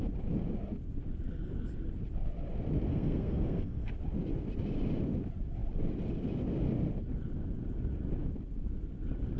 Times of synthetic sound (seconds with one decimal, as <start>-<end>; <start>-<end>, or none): 2.9-3.9